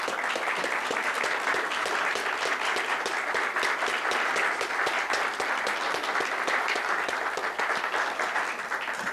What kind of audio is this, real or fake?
real